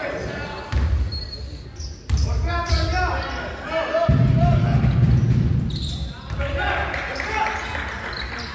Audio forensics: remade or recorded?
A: recorded